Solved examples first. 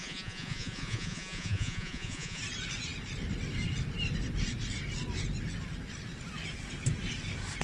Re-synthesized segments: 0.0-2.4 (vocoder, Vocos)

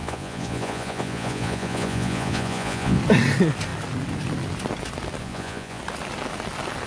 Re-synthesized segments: 0.0-3.0 (vocoder, Vocos); 5.2-5.8

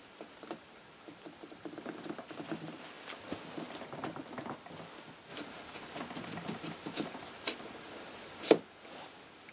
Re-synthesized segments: none

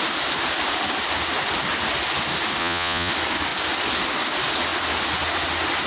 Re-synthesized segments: 2.6-3.1 (vocoder, Vocos)